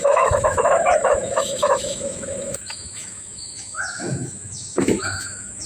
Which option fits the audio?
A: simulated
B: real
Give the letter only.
A